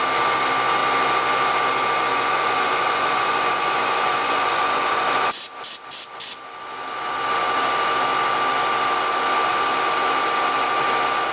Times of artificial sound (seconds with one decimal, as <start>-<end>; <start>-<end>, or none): 2.1-5.4